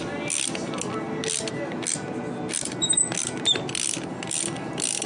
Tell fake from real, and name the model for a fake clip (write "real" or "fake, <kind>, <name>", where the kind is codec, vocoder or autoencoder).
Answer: real